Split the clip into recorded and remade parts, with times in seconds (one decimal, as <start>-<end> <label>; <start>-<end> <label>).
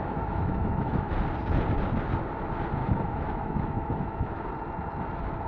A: 0.0-1.1 remade; 1.1-2.8 recorded; 2.8-4.4 remade; 4.4-5.5 recorded